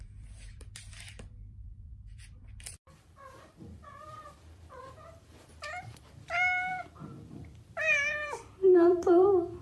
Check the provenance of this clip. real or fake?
fake